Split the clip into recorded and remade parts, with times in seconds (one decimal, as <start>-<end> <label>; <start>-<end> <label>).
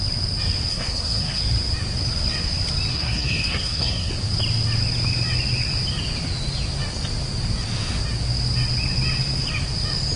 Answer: 0.0-0.7 recorded; 0.7-1.4 remade; 1.4-2.9 recorded; 2.9-4.1 remade; 4.1-10.2 recorded